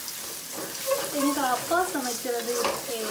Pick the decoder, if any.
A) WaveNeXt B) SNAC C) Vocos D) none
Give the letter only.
D